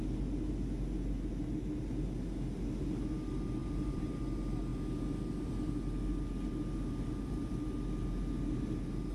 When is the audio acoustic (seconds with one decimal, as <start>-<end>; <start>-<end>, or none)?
0.0-3.6; 4.2-9.1